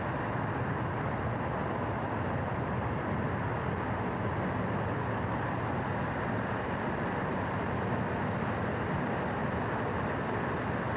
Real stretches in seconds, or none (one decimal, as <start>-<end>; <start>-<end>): 0.0-11.0